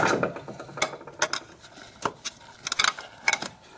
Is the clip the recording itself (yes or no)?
yes